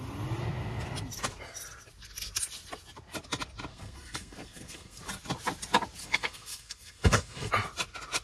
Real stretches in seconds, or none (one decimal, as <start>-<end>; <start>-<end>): 0.0-3.7; 5.0-6.0; 7.5-8.2